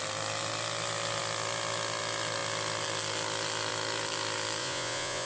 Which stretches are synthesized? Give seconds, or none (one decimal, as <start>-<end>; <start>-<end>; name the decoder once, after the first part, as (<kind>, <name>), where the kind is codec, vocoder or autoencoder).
4.6-5.3 (vocoder, Vocos)

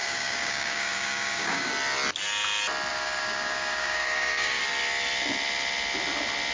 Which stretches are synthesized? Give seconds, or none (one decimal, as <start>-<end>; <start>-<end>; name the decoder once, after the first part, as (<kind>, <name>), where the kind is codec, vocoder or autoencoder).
0.0-1.7 (codec, DAC); 2.9-4.6

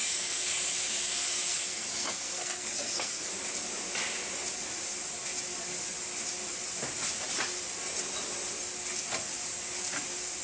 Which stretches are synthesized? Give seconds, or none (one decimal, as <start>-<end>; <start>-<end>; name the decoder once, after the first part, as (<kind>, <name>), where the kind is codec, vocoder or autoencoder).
0.0-3.3 (codec, SNAC)